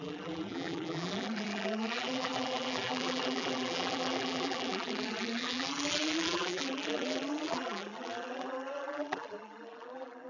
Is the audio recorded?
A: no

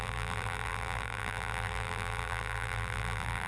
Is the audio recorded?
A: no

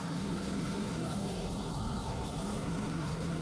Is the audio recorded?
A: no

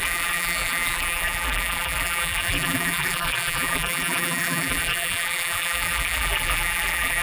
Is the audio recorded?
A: no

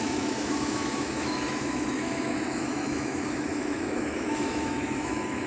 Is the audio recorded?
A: no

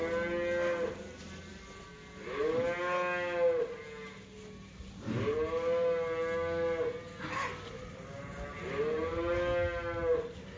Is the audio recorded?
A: yes